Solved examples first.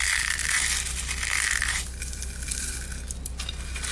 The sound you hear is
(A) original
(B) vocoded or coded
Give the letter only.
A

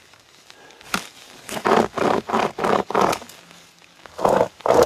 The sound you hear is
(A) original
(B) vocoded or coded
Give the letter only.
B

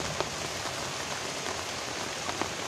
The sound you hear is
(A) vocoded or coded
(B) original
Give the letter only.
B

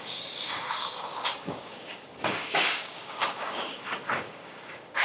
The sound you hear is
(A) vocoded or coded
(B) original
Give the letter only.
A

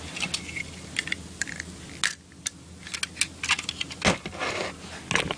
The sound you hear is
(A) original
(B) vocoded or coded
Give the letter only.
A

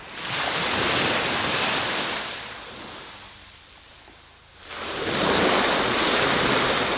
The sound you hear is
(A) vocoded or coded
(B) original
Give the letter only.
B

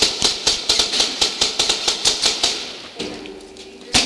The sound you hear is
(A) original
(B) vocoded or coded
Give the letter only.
A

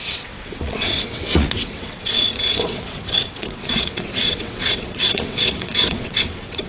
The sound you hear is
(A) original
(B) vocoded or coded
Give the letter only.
B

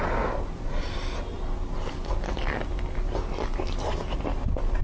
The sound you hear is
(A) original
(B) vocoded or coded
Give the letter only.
A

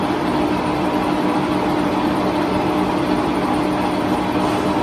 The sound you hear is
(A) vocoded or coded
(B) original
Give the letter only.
B